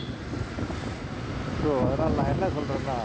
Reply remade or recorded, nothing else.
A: recorded